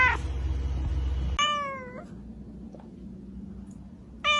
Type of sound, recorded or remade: recorded